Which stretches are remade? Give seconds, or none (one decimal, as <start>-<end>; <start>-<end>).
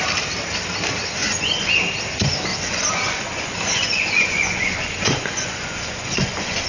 1.2-1.7; 2.5-6.7